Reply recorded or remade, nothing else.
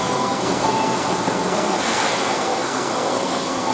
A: remade